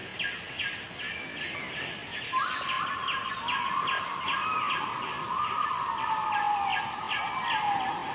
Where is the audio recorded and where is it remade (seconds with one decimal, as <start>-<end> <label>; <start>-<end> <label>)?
0.0-8.1 recorded